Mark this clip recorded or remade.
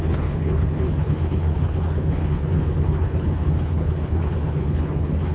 remade